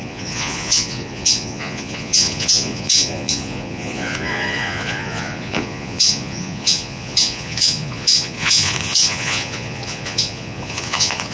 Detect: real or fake fake